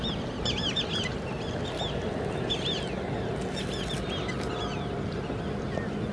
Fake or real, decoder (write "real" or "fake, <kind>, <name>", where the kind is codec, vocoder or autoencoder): real